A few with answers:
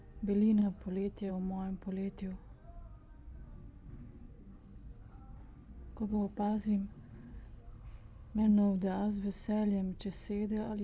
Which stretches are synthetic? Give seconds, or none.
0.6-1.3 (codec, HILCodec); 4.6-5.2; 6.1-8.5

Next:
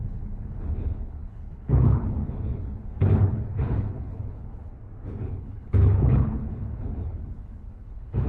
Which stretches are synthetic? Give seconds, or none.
0.0-4.7 (codec, HILCodec); 5.2-8.3

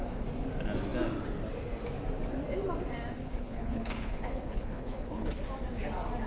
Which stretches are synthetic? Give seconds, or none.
3.2-5.4 (codec, HILCodec)